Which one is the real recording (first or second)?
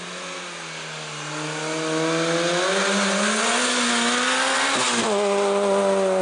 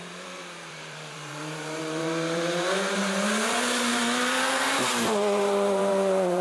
first